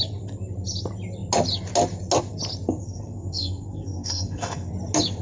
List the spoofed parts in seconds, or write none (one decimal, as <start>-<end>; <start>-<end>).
2.8-4.7